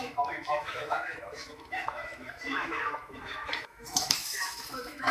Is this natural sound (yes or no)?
no